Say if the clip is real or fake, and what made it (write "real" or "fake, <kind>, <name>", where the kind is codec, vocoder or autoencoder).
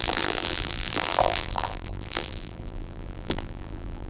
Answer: fake, vocoder, BigVGAN v2